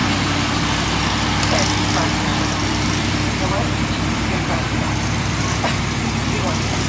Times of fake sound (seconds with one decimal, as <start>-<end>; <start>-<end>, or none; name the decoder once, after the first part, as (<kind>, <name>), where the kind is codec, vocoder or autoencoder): 2.3-5.8 (vocoder, BigVGAN v2)